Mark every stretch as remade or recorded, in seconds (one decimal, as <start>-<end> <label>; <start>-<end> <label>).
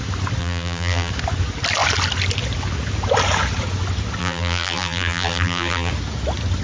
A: 0.0-0.4 recorded; 0.4-1.1 remade; 1.1-4.2 recorded; 4.2-5.9 remade; 5.9-6.6 recorded